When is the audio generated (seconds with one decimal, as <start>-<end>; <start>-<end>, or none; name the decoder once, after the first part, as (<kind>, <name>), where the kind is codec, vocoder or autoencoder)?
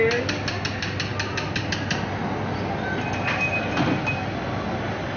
none